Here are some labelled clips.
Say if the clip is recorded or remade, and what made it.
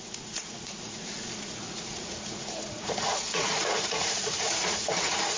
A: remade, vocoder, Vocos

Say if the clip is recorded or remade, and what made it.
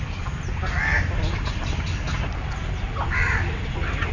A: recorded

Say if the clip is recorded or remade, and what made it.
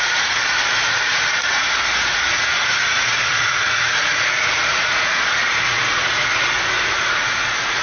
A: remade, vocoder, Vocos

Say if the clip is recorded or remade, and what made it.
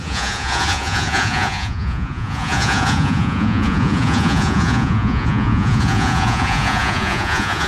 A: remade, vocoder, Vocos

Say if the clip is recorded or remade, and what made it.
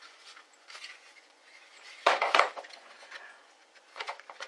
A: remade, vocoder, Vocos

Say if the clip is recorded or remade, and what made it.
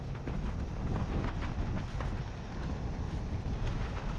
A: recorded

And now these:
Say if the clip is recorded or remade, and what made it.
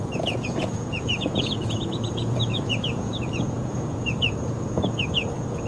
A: remade, vocoder, Vocos